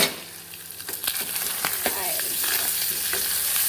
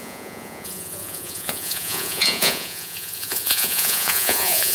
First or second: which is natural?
first